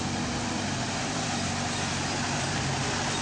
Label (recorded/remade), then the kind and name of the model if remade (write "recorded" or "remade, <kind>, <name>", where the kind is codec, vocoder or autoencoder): recorded